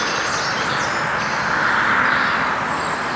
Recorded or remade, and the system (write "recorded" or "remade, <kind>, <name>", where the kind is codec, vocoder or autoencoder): recorded